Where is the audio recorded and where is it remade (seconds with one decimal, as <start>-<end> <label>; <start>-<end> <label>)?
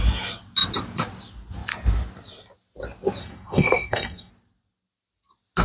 0.0-3.2 recorded; 3.2-4.3 remade; 4.3-5.6 recorded